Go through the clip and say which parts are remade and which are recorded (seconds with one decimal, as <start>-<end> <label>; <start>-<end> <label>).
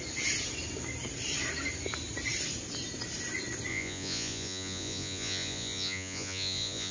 0.0-3.7 recorded; 3.7-6.9 remade